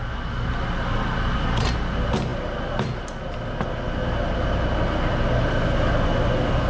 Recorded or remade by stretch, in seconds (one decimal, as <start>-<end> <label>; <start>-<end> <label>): 0.0-6.7 recorded